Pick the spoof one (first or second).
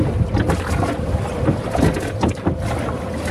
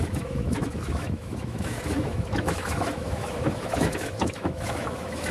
second